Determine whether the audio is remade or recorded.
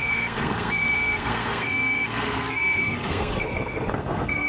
remade